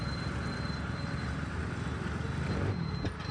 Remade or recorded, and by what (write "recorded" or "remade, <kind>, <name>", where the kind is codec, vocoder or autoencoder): recorded